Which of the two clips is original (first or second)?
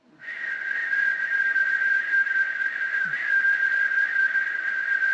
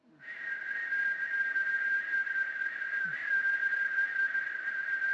second